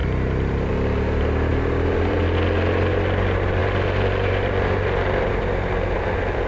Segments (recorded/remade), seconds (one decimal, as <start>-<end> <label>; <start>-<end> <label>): 0.0-0.7 remade; 0.7-1.5 recorded; 1.5-2.2 remade; 2.2-6.5 recorded